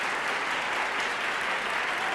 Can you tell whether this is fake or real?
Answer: real